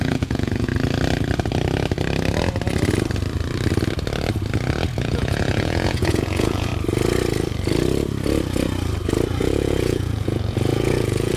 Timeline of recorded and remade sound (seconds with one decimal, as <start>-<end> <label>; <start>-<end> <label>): 0.0-0.7 remade; 0.7-5.0 recorded; 5.0-6.7 remade; 6.7-9.4 recorded; 9.4-11.4 remade